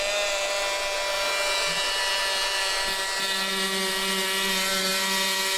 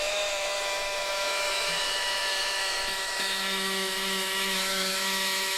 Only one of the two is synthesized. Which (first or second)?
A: second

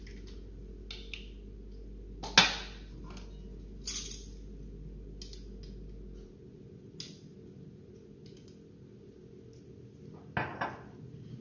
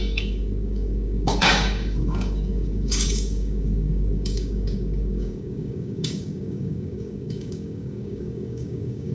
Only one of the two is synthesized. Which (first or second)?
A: second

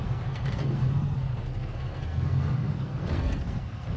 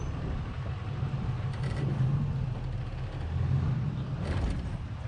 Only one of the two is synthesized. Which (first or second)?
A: first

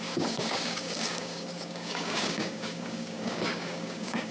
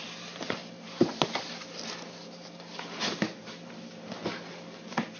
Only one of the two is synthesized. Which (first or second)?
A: first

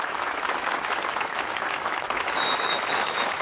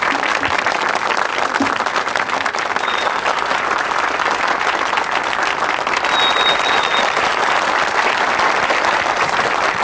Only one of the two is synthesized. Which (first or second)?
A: first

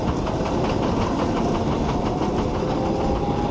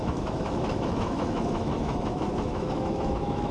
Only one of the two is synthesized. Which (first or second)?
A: second